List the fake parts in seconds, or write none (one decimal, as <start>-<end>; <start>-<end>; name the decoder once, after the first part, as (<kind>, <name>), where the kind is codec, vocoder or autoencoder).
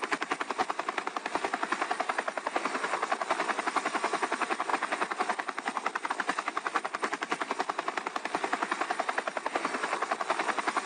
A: none